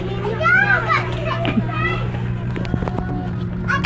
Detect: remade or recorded recorded